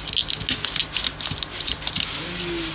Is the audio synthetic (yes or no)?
no